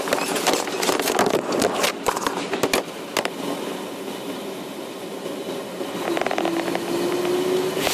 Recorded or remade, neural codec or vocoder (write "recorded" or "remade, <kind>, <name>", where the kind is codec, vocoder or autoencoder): recorded